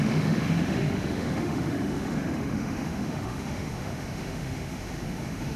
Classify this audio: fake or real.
fake